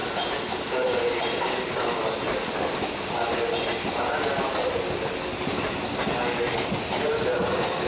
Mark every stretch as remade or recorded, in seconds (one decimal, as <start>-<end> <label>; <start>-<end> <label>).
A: 0.0-7.9 recorded